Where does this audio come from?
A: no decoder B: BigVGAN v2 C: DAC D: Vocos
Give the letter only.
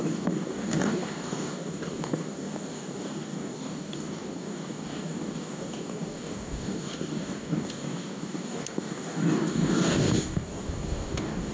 C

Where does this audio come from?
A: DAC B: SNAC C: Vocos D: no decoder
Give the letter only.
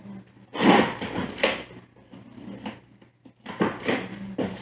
D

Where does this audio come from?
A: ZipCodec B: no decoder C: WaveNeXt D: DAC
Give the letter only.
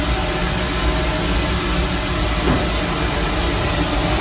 B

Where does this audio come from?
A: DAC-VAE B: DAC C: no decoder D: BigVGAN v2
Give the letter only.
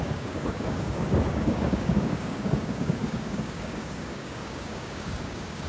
B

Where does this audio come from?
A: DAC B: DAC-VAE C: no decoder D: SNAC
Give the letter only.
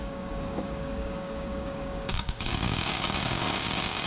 A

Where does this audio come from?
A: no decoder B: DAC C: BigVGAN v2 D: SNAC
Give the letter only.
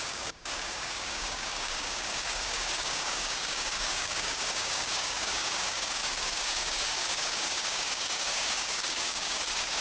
B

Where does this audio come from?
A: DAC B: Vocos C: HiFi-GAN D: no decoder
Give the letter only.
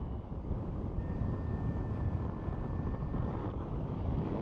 A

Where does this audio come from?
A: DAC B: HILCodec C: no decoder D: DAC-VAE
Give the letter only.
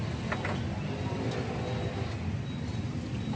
C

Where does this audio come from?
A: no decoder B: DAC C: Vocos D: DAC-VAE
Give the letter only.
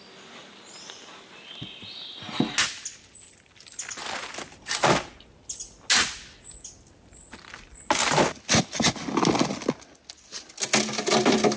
A